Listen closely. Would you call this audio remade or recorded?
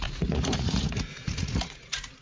remade